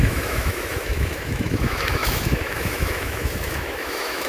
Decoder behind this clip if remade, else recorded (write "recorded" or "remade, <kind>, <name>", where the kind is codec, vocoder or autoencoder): remade, autoencoder, DAC-VAE